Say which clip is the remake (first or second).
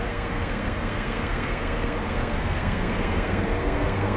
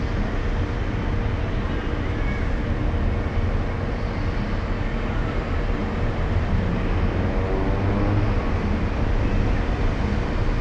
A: first